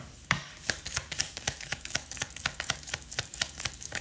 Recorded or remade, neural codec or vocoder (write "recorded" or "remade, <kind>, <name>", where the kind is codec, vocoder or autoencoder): remade, codec, DAC